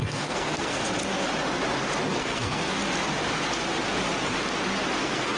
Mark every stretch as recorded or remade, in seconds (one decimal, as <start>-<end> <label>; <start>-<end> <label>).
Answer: 0.0-0.8 remade; 0.8-2.2 recorded; 2.2-2.8 remade; 2.8-5.0 recorded; 5.0-5.4 remade